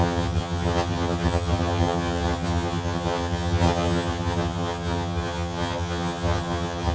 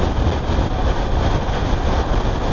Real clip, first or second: second